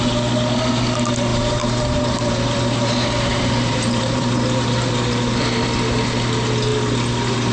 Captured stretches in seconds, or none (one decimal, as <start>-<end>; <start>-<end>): 0.0-1.3; 4.9-7.5